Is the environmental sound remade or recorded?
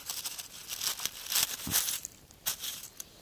recorded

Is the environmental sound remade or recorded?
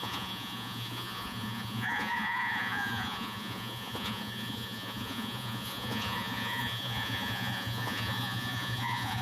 remade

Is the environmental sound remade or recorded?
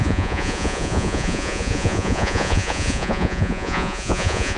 remade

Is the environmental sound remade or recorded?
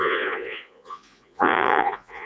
remade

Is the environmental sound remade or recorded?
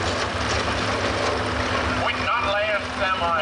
recorded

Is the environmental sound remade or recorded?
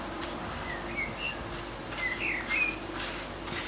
recorded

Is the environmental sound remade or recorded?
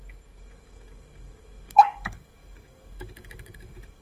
remade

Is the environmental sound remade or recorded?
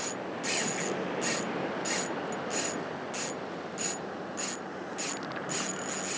recorded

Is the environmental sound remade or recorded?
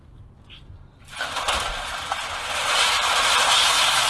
remade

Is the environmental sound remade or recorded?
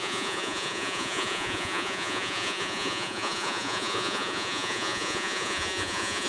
remade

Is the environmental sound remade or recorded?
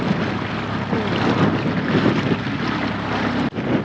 recorded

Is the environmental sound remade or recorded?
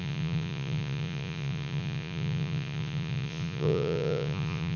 remade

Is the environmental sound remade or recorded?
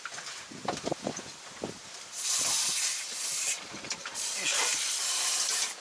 remade